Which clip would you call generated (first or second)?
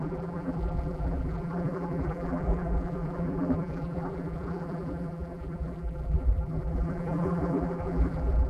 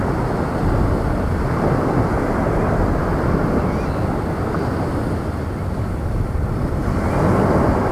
first